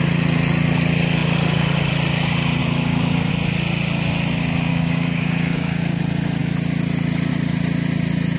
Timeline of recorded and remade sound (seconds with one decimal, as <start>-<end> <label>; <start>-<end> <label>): 0.0-2.6 recorded; 2.6-3.3 remade; 3.3-4.7 recorded; 4.7-6.0 remade; 6.0-8.4 recorded